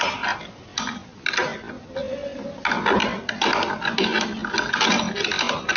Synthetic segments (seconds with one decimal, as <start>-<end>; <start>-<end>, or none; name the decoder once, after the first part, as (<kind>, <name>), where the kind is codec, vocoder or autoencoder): none